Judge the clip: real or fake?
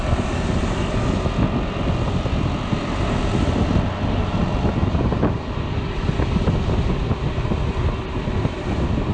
real